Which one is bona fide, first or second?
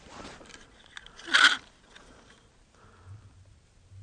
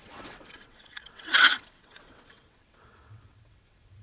first